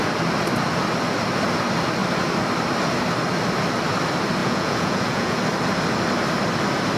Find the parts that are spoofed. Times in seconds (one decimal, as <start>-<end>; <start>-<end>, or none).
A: 4.4-5.4